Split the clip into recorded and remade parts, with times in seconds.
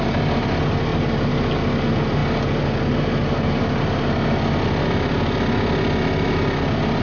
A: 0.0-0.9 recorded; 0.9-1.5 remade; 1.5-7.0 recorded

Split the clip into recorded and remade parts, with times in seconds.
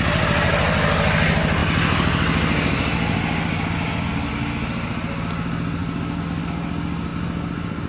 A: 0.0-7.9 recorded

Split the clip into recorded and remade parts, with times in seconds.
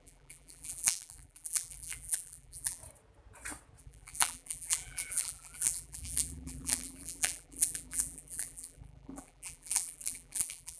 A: 0.0-2.8 remade; 2.8-3.8 recorded; 3.8-10.8 remade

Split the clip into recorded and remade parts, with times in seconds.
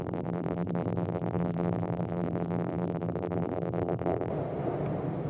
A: 0.0-4.3 remade; 4.3-5.3 recorded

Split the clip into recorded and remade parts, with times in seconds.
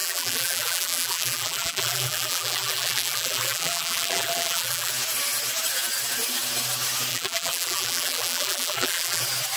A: 0.0-4.9 remade; 4.9-7.1 recorded; 7.1-9.2 remade; 9.2-9.6 recorded